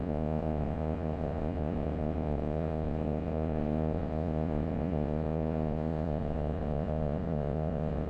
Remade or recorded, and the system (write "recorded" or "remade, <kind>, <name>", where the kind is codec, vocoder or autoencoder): remade, vocoder, Vocos